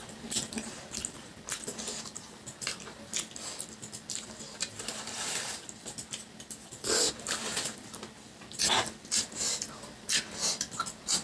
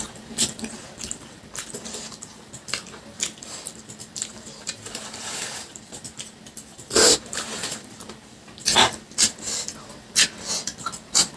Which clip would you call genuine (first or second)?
first